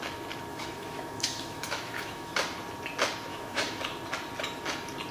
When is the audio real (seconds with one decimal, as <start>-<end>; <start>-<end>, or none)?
0.0-0.5; 2.3-3.3; 3.8-5.1